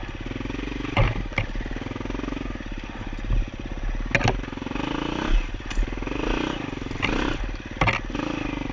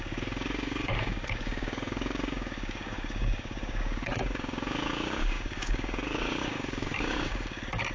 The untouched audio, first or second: first